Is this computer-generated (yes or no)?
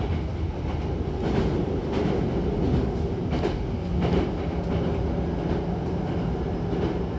no